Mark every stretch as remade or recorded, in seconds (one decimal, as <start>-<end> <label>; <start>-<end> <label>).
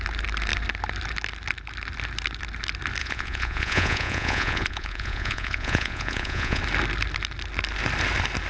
0.0-3.0 recorded; 3.0-6.6 remade; 6.6-8.5 recorded